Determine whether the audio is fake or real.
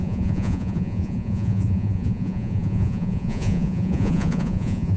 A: fake